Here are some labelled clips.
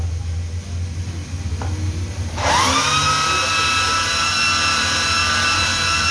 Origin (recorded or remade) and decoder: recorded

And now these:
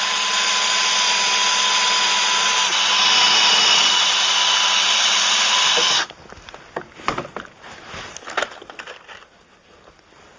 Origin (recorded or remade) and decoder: recorded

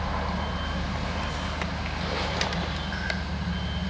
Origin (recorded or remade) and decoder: recorded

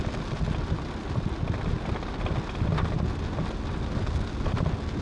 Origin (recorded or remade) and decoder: recorded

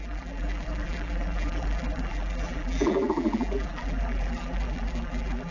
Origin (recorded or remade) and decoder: remade, vocoder, BigVGAN v2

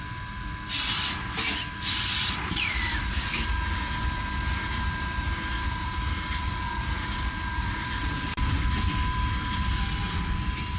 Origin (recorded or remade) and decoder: remade, vocoder, BigVGAN v2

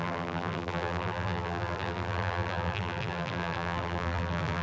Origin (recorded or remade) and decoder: remade, vocoder, BigVGAN v2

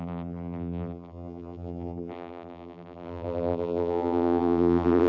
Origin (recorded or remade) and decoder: remade, vocoder, BigVGAN v2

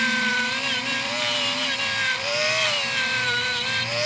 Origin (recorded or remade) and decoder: remade, vocoder, BigVGAN v2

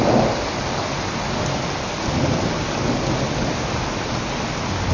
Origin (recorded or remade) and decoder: recorded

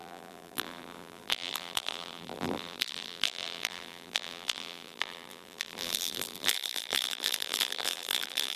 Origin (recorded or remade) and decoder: remade, vocoder, BigVGAN v2